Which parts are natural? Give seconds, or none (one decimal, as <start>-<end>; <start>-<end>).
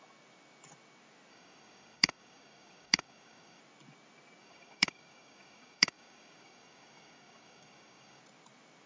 0.0-1.3; 3.6-4.4; 8.2-8.9